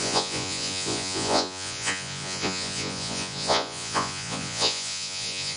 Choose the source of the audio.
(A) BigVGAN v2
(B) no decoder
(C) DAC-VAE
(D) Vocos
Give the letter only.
D